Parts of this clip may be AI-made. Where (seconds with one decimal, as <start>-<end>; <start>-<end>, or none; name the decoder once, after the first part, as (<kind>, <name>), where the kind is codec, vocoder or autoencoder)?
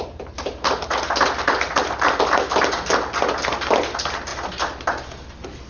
none